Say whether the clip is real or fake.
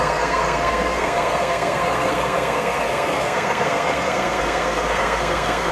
fake